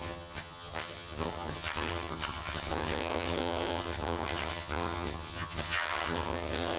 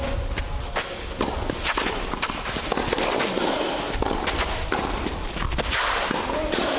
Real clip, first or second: second